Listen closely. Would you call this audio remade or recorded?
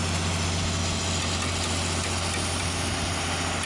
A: recorded